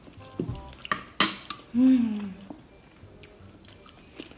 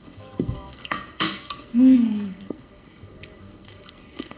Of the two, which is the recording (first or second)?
first